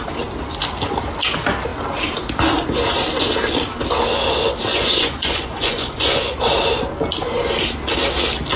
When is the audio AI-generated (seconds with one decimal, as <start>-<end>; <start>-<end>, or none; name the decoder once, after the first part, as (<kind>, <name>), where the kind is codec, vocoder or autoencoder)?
4.7-6.4 (vocoder, Vocos)